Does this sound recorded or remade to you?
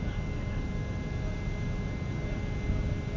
recorded